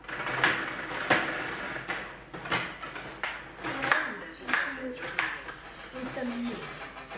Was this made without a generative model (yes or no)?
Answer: yes